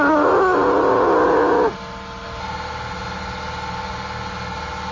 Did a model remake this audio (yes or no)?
no